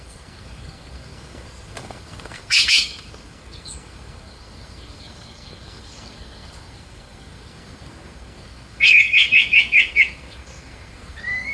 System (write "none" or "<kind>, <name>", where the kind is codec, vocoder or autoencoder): codec, SNAC